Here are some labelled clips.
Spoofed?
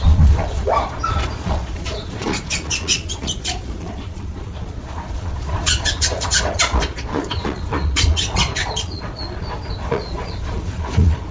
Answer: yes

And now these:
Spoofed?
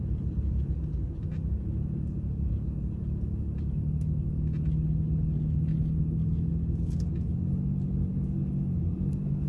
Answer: no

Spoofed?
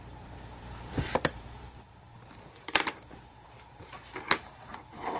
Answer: yes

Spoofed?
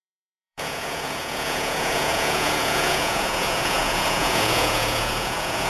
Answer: yes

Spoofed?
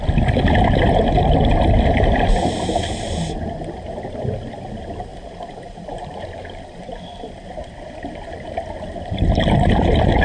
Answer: no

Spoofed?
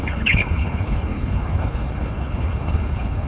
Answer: yes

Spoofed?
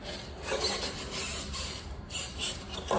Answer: no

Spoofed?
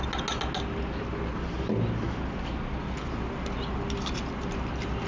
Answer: no